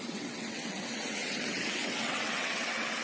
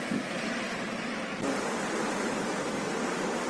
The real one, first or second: second